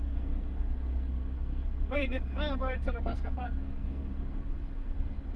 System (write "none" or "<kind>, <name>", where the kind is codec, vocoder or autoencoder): codec, SNAC